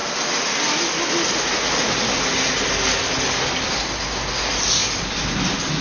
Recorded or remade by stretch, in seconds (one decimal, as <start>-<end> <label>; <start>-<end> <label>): 0.0-5.8 recorded